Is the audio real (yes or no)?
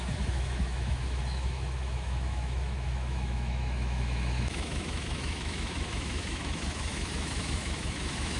no